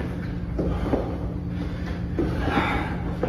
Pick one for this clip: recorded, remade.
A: recorded